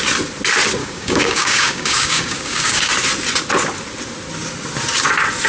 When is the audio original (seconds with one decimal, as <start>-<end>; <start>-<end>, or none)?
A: 0.0-0.8; 2.9-5.5

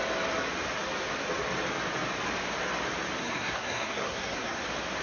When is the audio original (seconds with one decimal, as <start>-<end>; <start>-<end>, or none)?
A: 0.0-3.2; 4.6-5.0

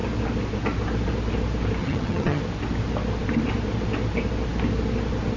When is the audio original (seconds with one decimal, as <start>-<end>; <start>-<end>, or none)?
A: 0.0-1.8; 2.4-5.4

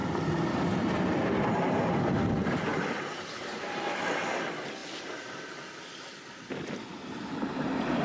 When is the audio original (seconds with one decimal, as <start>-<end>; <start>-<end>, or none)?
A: 1.3-2.7; 3.5-8.0

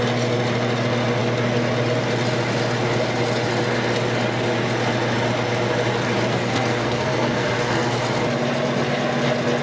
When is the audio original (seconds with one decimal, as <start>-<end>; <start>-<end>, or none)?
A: 0.0-6.3; 8.0-9.6

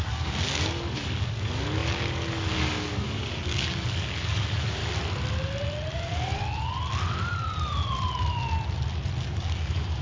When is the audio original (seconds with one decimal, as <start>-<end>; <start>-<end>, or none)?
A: 4.8-9.2

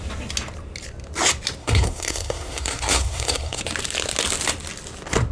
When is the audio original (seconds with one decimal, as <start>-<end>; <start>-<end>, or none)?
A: 0.0-1.6; 3.6-5.3

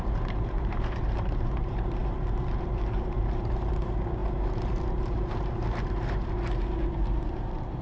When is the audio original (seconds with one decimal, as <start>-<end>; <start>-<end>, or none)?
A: none